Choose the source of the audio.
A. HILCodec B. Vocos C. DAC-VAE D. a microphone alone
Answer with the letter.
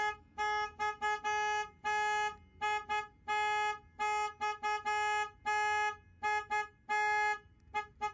D